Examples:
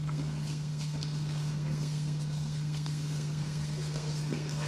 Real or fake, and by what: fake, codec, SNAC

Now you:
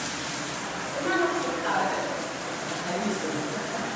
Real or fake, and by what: real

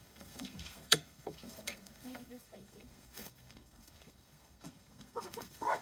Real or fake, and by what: fake, codec, SNAC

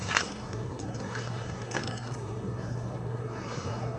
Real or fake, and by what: fake, codec, SNAC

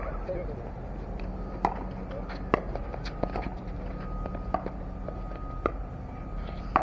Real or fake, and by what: real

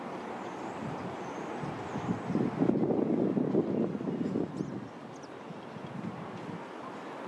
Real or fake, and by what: real